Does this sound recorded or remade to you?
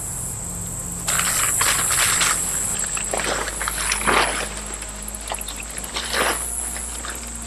recorded